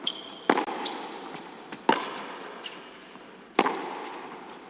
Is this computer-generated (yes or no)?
no